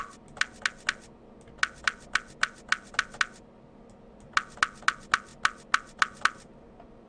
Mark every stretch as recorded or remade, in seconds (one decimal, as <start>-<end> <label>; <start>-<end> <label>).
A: 0.0-7.1 recorded